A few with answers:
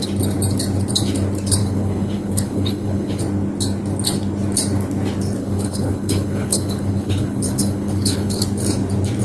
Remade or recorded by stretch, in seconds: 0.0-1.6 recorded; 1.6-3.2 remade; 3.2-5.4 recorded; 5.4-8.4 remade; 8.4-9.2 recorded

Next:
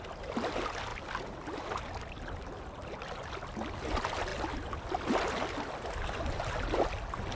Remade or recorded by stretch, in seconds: 0.0-7.3 recorded